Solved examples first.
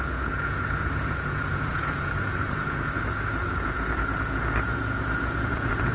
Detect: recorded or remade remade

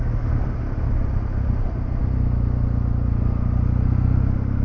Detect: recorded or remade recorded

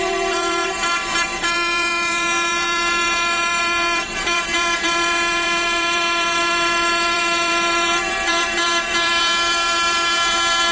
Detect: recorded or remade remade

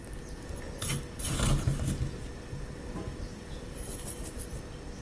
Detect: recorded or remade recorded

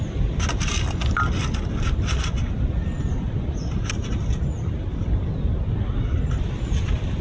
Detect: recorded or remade recorded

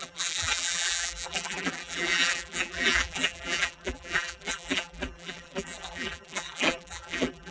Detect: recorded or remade remade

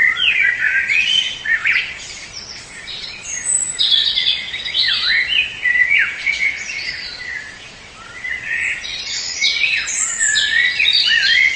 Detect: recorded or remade remade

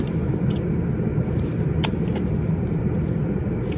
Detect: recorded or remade remade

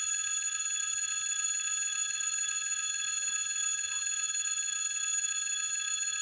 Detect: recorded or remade remade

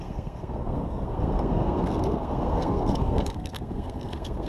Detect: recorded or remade remade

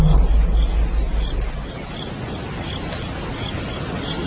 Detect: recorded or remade recorded